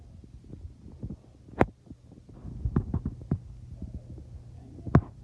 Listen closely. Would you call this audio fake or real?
real